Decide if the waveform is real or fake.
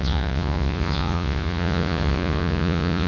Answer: fake